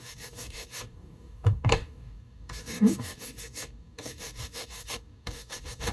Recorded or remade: remade